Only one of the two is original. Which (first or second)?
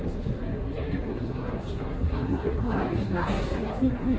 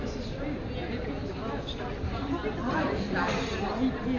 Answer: second